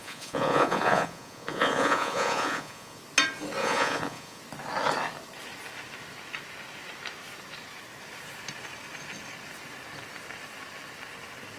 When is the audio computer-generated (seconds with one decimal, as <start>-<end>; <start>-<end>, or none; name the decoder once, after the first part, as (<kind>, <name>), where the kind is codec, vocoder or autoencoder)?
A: 0.0-3.0 (vocoder, Vocos); 3.6-4.4

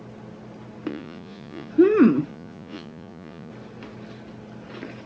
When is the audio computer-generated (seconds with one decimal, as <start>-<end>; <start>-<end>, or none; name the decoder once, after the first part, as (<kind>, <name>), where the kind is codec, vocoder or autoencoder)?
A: 0.9-1.7 (vocoder, Vocos); 2.3-3.5

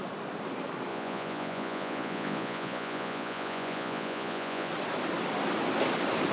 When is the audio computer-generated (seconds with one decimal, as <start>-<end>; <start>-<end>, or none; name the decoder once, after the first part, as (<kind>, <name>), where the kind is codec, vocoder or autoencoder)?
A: 0.9-4.7 (vocoder, Vocos)

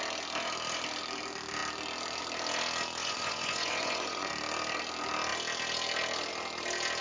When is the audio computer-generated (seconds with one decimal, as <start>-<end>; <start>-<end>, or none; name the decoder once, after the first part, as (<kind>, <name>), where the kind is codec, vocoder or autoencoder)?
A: 3.0-4.3 (vocoder, Vocos)